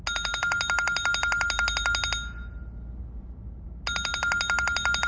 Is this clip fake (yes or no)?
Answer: no